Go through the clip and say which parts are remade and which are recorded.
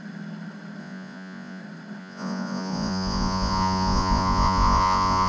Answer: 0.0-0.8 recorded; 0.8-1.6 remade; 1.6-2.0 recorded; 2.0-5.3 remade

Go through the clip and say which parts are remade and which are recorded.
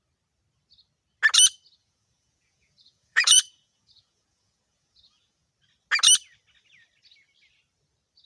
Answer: 0.0-1.8 recorded; 1.8-5.5 remade; 5.5-8.3 recorded